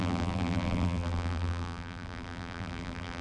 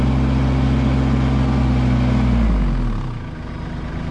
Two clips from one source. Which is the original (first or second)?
second